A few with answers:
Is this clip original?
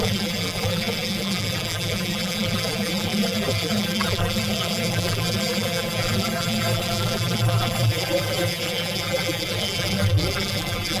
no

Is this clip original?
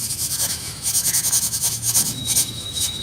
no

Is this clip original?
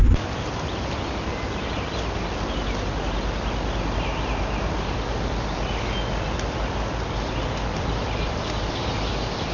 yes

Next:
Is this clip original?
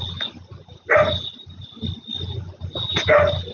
yes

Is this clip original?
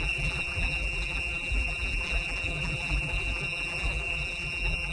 no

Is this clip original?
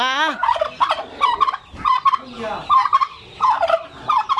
yes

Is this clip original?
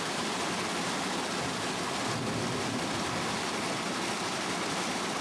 yes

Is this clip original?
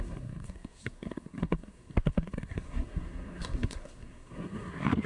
no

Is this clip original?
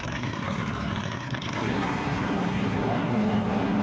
no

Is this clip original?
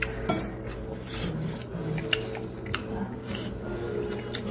yes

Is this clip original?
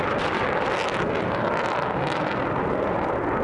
yes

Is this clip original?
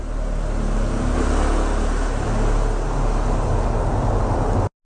yes